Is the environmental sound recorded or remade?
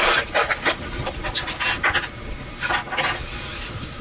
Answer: recorded